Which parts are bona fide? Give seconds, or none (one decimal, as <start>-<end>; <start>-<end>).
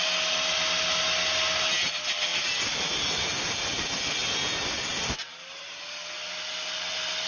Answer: 0.0-7.3